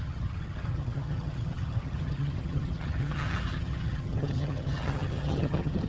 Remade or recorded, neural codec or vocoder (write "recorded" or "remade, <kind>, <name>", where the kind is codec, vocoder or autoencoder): remade, vocoder, HiFi-GAN